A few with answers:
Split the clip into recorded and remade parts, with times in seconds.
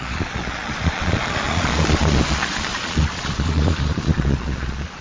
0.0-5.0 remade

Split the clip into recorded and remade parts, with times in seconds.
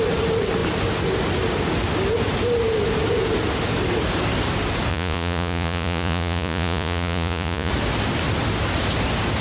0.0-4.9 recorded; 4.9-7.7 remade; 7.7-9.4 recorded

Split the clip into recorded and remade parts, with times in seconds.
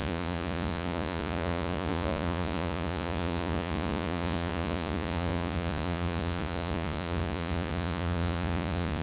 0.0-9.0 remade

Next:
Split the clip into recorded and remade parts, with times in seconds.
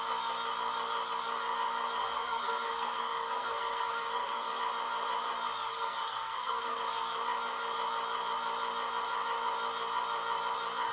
0.0-2.0 recorded; 2.0-4.6 remade; 4.6-5.7 recorded; 5.7-6.8 remade; 6.8-10.9 recorded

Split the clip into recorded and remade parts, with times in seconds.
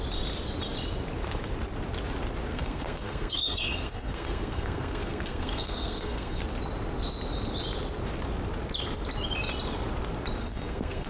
0.0-2.5 recorded; 2.5-6.4 remade; 6.4-10.4 recorded; 10.4-11.1 remade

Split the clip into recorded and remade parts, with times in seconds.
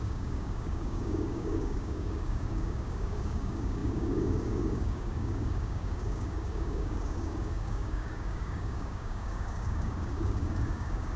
0.0-11.2 remade